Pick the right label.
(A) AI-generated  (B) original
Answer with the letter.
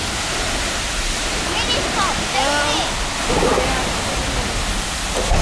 B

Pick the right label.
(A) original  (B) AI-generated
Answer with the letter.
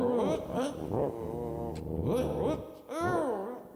A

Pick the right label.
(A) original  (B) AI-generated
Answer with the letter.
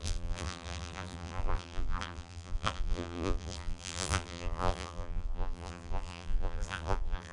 B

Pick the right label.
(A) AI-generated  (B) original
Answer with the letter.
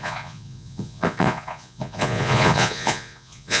A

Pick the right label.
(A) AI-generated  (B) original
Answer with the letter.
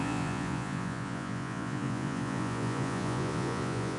A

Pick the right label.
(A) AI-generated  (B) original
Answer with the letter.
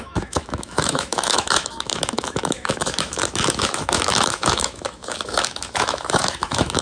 A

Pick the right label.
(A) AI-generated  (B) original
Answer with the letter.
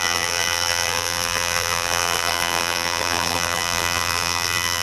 A